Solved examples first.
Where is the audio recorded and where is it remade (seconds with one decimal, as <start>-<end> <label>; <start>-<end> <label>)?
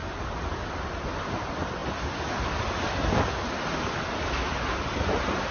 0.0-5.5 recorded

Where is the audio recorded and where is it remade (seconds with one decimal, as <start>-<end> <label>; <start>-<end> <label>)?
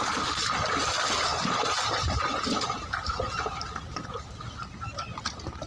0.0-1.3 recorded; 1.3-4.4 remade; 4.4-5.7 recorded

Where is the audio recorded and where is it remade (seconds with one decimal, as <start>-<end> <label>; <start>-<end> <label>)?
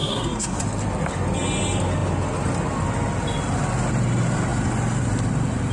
0.0-0.6 remade; 0.6-5.7 recorded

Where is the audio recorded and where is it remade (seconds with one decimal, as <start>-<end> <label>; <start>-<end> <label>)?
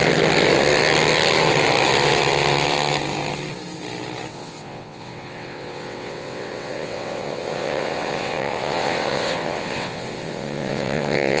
0.0-4.3 recorded; 4.3-11.4 remade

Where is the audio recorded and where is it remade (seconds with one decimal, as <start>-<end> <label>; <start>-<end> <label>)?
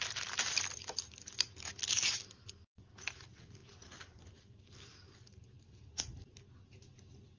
0.0-7.4 recorded